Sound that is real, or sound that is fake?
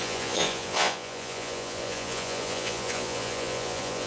fake